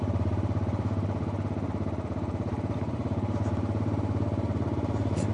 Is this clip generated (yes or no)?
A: no